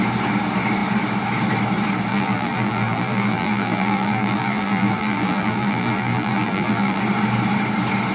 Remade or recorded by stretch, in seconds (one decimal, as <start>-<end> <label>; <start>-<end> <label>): 0.0-2.1 recorded; 2.1-7.0 remade; 7.0-8.1 recorded